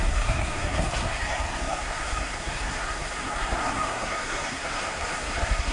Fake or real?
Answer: fake